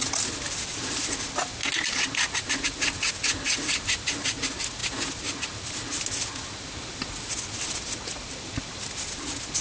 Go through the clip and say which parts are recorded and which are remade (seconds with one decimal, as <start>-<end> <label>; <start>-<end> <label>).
0.0-9.6 recorded